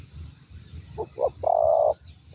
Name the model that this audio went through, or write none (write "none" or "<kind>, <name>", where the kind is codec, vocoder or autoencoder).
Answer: none